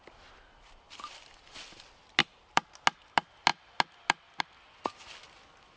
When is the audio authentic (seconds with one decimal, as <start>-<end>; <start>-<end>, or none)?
0.0-2.2; 2.7-5.8